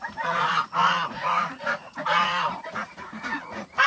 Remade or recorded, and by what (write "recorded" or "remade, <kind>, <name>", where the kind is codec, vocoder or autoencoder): remade, vocoder, Vocos